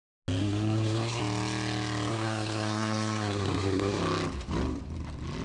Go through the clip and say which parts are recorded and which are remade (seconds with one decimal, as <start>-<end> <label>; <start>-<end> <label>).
0.0-0.4 recorded; 0.4-1.2 remade; 1.2-2.1 recorded; 2.1-4.0 remade; 4.0-5.4 recorded